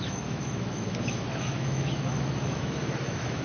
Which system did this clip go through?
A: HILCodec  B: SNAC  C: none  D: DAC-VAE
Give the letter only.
D